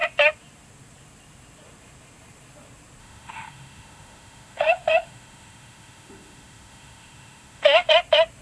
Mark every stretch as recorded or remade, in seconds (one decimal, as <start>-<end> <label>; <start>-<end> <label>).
0.0-3.0 recorded; 3.0-7.9 remade; 7.9-8.4 recorded